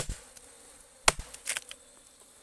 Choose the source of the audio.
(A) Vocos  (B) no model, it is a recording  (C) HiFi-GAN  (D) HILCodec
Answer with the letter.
B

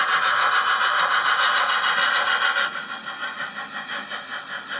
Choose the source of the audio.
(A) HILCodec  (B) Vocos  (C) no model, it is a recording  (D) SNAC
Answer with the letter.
C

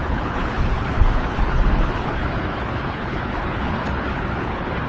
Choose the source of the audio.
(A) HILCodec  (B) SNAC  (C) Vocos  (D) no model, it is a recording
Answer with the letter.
A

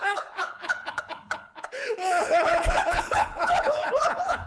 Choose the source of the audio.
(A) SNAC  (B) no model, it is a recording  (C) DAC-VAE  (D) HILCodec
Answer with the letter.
D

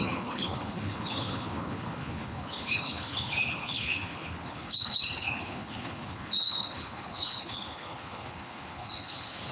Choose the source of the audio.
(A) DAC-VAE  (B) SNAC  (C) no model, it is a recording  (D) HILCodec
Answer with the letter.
D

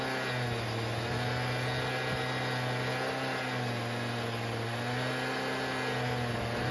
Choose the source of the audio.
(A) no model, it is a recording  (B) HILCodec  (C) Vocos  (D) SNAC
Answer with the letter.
A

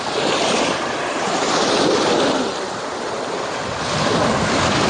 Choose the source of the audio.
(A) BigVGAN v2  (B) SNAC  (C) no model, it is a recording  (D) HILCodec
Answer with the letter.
C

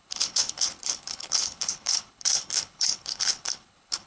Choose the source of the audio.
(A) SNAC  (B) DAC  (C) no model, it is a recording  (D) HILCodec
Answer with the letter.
D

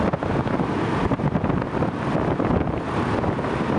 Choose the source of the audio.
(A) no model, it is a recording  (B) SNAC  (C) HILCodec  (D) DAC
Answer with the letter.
A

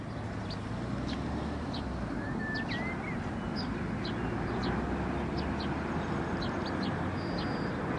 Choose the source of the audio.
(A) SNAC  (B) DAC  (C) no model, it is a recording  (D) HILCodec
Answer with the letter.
C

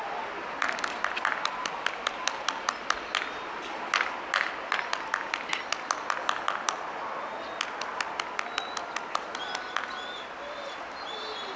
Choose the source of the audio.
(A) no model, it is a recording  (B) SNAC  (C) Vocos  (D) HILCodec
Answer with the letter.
A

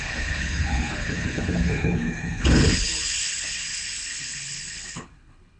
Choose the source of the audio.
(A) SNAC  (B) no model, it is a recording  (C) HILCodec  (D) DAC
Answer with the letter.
C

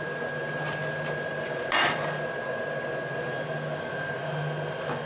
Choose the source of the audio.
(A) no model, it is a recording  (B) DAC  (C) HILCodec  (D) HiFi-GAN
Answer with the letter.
A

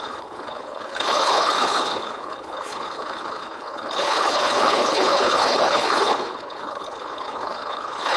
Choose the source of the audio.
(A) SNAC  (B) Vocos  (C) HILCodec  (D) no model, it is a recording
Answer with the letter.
C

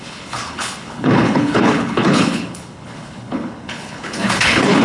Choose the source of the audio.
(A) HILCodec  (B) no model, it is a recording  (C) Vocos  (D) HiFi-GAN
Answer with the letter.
A